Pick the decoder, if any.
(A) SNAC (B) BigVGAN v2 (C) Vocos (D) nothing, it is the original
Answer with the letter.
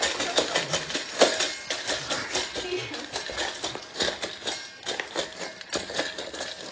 D